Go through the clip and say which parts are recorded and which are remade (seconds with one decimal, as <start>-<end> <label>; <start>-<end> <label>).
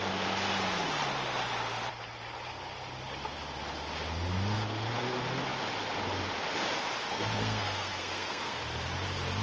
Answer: 0.0-7.1 recorded; 7.1-8.6 remade; 8.6-9.4 recorded